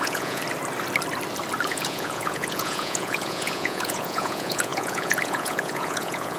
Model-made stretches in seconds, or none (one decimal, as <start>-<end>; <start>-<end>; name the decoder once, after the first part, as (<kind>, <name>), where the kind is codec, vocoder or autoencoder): 0.0-0.4 (vocoder, Vocos); 1.7-6.4